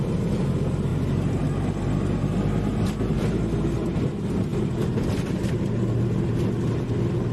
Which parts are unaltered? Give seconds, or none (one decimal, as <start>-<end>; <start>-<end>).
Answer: 0.0-7.3